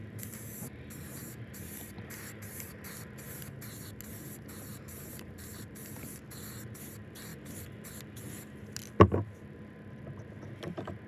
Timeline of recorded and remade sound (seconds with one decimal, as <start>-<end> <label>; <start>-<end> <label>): 0.0-2.9 remade; 2.9-4.7 recorded; 4.7-6.2 remade; 6.2-11.1 recorded